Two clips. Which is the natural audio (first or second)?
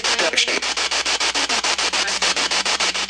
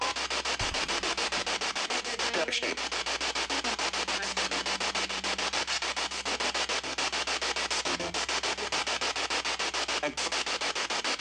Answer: second